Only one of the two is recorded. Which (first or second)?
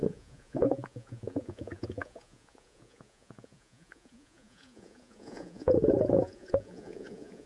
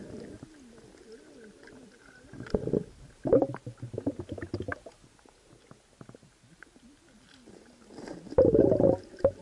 second